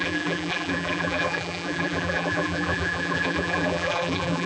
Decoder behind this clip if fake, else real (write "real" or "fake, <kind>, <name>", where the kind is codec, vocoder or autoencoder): fake, vocoder, BigVGAN v2